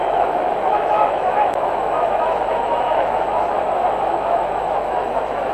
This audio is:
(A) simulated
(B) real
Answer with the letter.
A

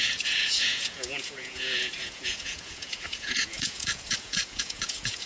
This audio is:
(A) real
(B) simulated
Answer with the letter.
B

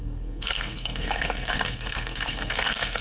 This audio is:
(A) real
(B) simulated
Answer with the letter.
B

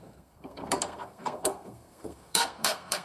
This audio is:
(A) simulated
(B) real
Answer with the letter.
A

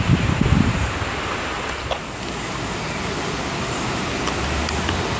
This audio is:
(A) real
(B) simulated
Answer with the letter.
A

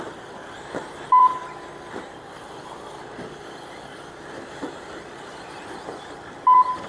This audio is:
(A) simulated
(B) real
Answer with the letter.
B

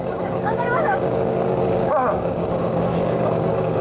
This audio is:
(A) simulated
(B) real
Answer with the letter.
A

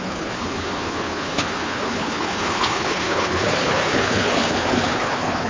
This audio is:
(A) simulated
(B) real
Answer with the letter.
A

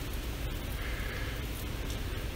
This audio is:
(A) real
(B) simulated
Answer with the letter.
A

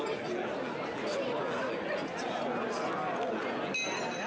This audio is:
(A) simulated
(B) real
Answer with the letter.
B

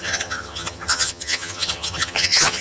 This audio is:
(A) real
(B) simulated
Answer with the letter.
B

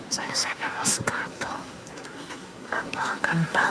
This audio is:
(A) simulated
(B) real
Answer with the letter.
A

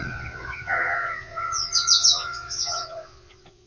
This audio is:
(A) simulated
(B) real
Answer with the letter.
A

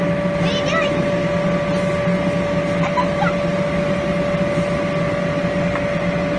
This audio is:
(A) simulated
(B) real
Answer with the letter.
B